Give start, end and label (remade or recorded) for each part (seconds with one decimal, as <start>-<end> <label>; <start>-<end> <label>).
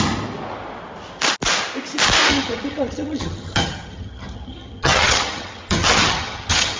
0.0-2.3 recorded; 2.3-6.8 remade